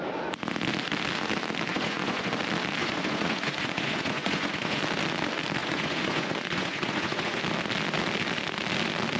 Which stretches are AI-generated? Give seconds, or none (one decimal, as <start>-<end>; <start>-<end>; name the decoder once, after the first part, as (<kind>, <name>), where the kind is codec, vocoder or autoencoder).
1.7-2.3 (vocoder, Vocos); 2.8-4.8; 5.6-7.4